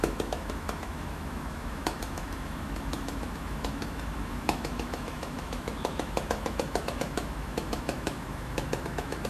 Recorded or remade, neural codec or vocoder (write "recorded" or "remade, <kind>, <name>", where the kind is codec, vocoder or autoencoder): remade, autoencoder, DAC-VAE